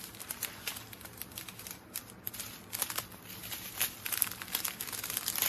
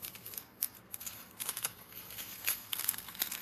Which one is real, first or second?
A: first